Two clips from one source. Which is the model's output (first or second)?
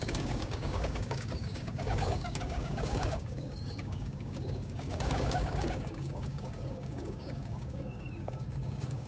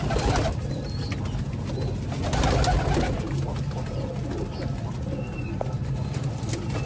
first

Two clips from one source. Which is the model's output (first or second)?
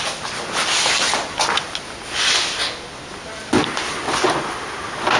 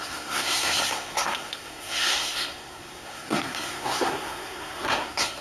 second